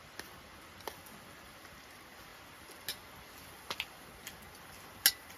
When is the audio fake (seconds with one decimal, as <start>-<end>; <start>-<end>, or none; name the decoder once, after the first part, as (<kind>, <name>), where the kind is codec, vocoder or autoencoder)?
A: none